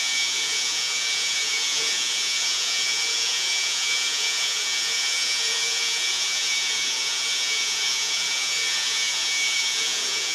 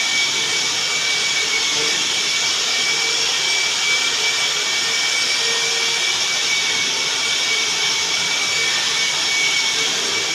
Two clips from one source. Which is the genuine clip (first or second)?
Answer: second